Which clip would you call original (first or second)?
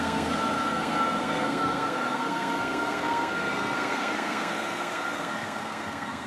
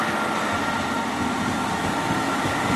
second